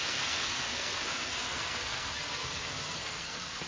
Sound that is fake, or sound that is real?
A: fake